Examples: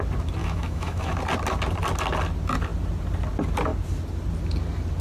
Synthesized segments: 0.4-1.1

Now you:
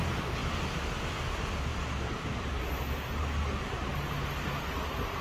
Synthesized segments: none